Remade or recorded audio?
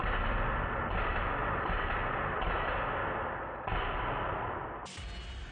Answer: recorded